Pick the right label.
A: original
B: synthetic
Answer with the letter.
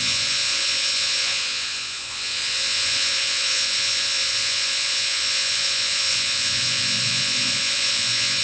B